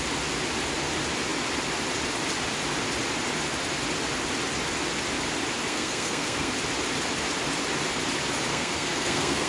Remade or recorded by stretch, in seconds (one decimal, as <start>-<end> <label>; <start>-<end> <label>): 0.0-5.7 recorded; 5.7-6.5 remade; 6.5-8.5 recorded; 8.5-9.5 remade